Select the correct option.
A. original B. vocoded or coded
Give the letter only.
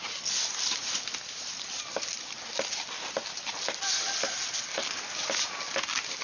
A